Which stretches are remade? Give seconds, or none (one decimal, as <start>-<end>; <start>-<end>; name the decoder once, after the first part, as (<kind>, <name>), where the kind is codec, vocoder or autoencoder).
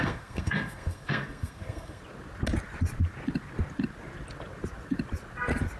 0.0-2.0 (codec, SNAC)